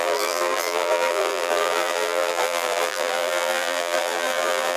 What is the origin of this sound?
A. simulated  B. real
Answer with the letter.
A